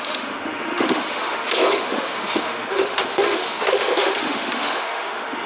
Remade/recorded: remade